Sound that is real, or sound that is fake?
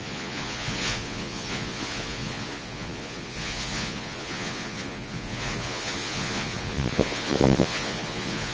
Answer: fake